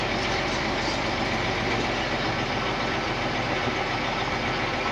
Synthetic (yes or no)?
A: no